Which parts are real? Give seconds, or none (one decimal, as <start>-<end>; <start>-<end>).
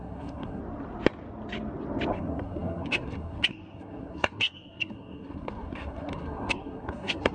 0.6-2.1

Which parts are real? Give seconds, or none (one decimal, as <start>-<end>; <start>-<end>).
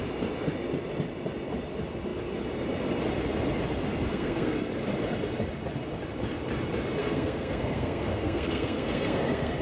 0.0-4.1; 4.7-7.0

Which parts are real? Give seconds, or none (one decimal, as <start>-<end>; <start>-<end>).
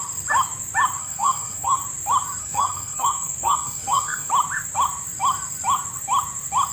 0.0-1.0; 1.8-2.4; 4.3-6.7